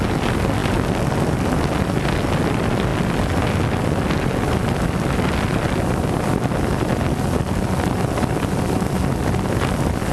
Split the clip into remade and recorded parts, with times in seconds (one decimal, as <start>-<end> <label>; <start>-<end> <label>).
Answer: 0.0-10.1 recorded